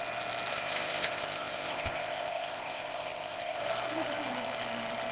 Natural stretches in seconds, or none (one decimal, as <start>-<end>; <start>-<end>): 0.0-0.5; 3.6-5.1